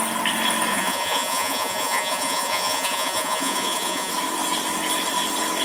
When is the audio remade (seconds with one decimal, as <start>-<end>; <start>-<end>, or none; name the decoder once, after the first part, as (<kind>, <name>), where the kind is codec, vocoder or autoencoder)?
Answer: 0.7-4.1 (vocoder, Vocos)